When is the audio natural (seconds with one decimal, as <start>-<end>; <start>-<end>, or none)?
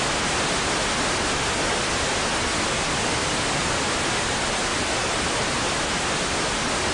0.0-6.9